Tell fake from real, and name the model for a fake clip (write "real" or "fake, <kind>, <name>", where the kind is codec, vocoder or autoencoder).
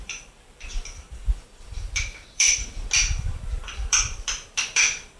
fake, vocoder, BigVGAN v2